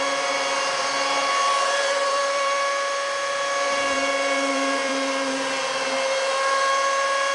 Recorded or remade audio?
remade